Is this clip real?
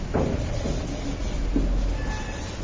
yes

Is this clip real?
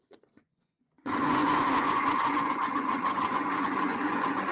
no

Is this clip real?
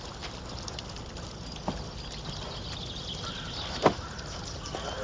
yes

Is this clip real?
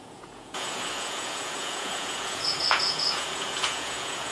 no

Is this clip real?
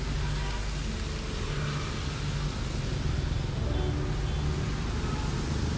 yes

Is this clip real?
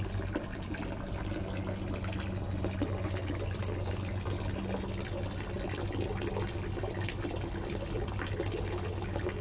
yes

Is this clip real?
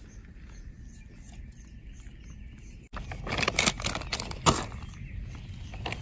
yes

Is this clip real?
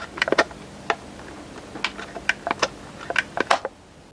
yes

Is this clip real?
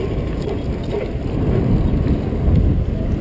yes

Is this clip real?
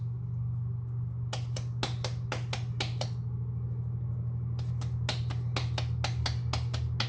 yes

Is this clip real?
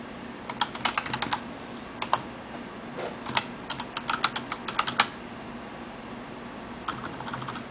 yes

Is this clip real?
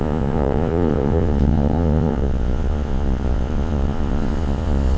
no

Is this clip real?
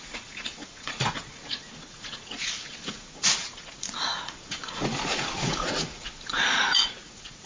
no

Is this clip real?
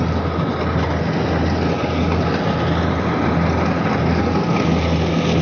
yes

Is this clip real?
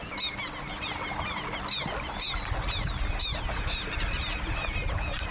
yes